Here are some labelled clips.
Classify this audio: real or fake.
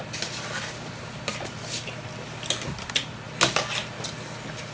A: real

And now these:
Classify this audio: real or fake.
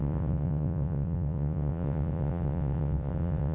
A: fake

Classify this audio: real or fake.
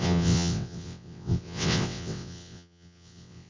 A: fake